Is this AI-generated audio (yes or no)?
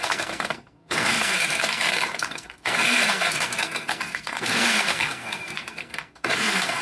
yes